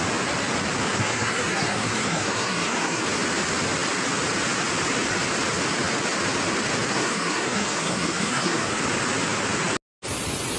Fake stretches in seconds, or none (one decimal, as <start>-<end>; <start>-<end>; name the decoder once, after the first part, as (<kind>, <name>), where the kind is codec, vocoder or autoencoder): 1.0-3.0 (codec, SNAC); 6.9-8.8